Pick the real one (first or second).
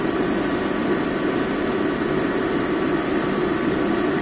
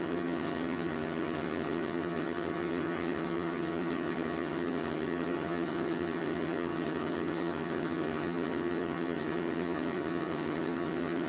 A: first